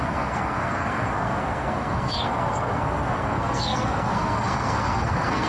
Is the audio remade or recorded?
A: remade